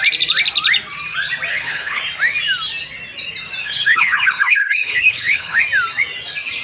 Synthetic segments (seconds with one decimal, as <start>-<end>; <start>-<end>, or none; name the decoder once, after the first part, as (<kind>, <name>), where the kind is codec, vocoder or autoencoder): 1.5-2.0 (codec, HILCodec); 3.6-5.6

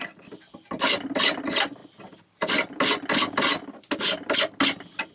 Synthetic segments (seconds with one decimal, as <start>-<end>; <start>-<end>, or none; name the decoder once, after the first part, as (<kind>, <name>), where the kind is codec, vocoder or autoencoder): none

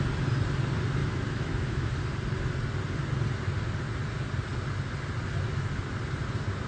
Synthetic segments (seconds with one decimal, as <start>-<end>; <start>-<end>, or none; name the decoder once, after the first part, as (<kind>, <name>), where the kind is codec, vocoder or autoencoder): 1.0-1.9 (autoencoder, DAC-VAE)

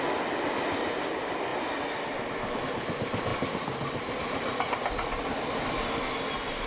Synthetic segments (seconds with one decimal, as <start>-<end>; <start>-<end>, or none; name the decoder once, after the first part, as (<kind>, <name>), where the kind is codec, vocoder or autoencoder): none

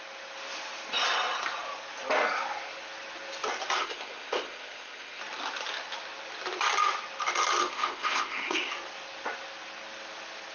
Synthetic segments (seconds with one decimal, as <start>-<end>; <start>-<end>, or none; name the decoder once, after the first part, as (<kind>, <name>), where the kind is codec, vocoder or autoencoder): 3.8-5.2 (codec, ZipCodec); 7.6-8.7

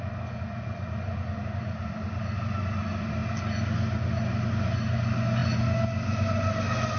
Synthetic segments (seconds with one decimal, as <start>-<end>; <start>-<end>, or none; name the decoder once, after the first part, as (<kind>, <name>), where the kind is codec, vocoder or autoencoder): none